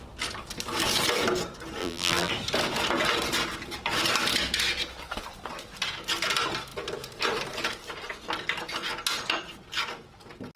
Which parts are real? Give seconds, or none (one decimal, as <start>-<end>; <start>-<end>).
0.0-1.8; 2.3-10.6